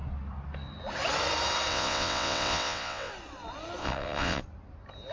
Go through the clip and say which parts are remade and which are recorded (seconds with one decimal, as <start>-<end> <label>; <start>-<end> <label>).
0.0-1.7 recorded; 1.7-3.1 remade; 3.1-3.8 recorded; 3.8-4.4 remade; 4.4-5.1 recorded